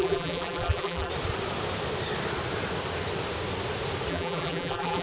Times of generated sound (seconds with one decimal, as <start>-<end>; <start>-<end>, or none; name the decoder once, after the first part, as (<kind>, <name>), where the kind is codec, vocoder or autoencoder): 0.0-1.1 (vocoder, BigVGAN v2); 4.1-5.0